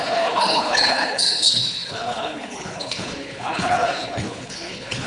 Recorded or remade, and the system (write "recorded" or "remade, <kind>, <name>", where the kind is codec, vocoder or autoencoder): remade, codec, HILCodec